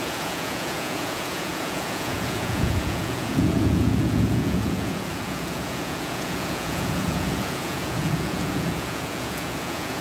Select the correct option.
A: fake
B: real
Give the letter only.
A